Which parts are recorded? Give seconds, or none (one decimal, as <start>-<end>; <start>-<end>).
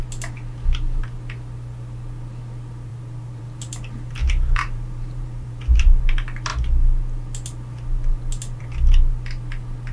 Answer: 0.0-2.9; 3.4-4.2; 6.0-9.9